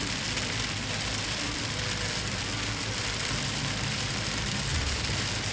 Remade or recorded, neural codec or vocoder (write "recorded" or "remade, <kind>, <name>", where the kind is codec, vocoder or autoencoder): remade, vocoder, BigVGAN v2